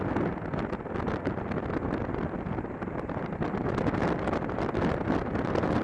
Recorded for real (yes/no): no